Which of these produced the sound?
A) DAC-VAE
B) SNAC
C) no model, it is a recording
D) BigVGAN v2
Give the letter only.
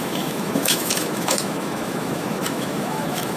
A